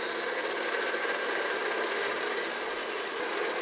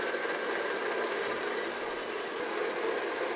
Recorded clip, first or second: second